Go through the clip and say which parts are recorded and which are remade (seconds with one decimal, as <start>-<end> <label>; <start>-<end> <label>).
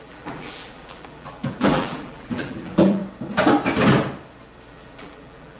0.0-3.0 remade; 3.0-4.7 recorded; 4.7-5.6 remade